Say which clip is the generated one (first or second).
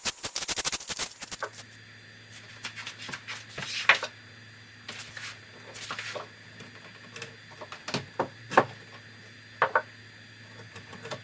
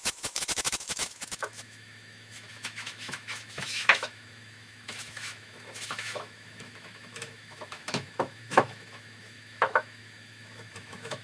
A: second